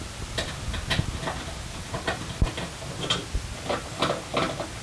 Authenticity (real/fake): real